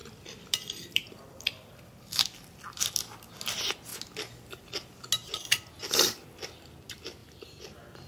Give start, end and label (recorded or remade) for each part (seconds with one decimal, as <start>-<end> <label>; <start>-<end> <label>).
0.0-2.2 remade; 2.2-7.2 recorded; 7.2-8.1 remade